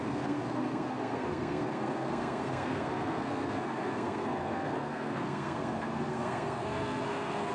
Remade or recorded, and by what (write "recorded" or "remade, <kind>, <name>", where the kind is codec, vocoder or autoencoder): remade, codec, SNAC